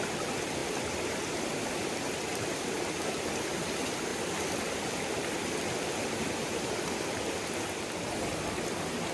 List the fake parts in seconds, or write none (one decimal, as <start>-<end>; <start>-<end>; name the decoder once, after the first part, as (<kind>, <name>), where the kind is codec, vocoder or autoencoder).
0.6-3.0 (vocoder, BigVGAN v2); 4.1-7.2